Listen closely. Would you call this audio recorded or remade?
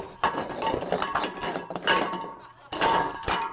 recorded